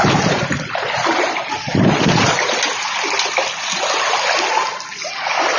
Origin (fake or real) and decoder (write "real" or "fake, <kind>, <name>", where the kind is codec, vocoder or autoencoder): real